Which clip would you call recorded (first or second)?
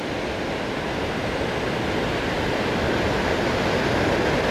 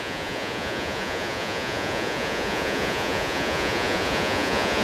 first